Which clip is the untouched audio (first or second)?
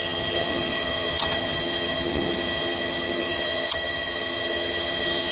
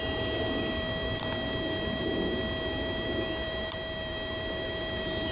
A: second